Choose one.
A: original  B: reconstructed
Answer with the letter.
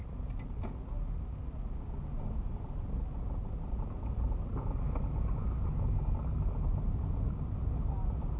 A